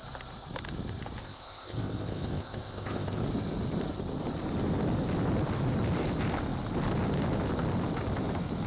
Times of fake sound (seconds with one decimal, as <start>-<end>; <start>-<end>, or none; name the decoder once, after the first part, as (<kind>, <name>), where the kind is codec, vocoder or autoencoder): 1.2-3.2 (codec, ZipCodec)